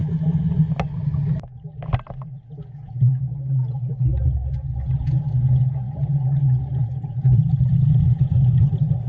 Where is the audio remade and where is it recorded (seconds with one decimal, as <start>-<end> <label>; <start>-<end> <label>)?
0.0-2.6 recorded; 2.6-4.1 remade; 4.1-4.9 recorded; 4.9-9.1 remade